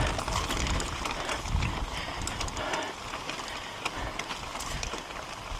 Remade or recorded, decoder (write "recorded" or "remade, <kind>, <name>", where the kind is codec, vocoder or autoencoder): recorded